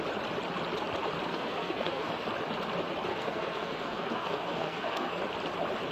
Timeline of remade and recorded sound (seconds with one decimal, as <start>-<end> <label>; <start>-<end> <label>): 0.0-1.3 recorded; 1.3-2.1 remade; 2.1-3.1 recorded; 3.1-5.2 remade; 5.2-5.9 recorded